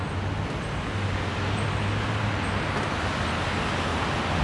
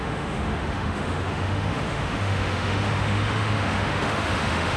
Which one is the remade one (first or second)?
second